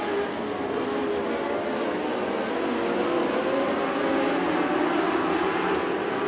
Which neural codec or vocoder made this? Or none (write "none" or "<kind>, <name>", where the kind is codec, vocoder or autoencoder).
none